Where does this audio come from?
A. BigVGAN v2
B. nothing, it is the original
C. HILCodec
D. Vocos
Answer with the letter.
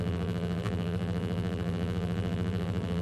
A